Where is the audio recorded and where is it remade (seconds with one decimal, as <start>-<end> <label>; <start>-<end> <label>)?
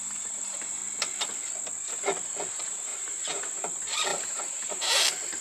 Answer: 0.0-0.8 remade; 0.8-2.5 recorded; 2.5-5.4 remade